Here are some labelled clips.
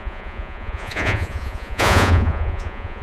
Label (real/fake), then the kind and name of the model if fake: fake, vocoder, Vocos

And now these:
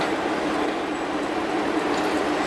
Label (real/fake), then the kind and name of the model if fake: real